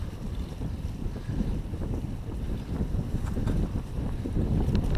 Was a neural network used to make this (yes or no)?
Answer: yes